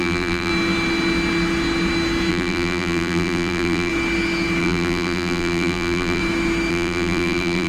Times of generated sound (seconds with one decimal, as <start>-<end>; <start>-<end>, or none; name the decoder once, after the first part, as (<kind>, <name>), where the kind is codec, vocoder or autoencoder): 0.0-0.5 (vocoder, BigVGAN v2); 2.3-3.9; 4.6-6.2; 6.7-7.7